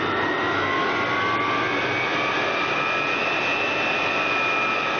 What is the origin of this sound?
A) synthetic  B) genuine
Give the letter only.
B